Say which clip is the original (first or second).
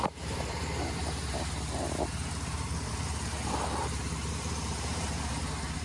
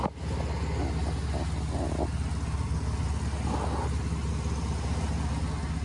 second